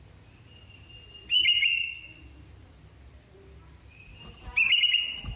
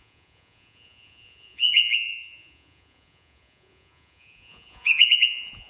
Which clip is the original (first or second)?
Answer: first